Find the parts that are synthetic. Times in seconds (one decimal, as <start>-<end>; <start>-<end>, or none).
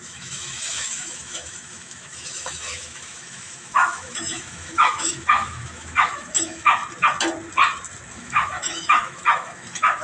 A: 0.0-6.8; 8.1-10.0